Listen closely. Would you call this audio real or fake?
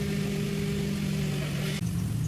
real